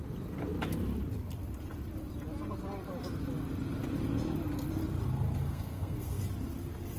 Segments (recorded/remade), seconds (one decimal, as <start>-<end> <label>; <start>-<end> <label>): 0.0-5.4 recorded; 5.4-6.2 remade; 6.2-7.0 recorded